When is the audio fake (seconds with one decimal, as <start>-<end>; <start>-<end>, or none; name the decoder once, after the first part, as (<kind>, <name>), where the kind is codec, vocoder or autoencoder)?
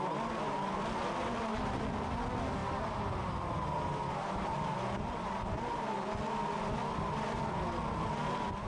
2.6-4.8 (vocoder, BigVGAN v2); 6.8-7.4